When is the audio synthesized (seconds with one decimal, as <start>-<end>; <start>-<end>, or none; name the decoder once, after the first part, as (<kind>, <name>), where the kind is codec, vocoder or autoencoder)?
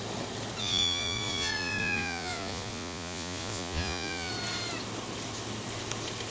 0.6-4.3 (vocoder, Vocos)